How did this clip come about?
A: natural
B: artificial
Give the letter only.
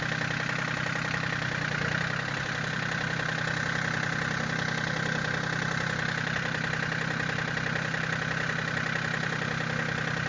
A